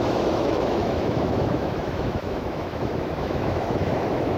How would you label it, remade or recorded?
remade